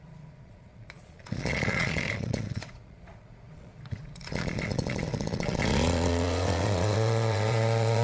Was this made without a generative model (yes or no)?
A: no